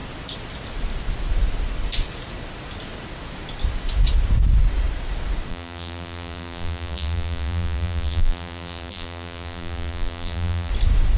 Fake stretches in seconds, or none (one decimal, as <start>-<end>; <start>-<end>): 5.5-10.7